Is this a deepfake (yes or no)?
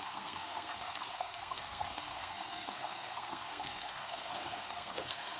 yes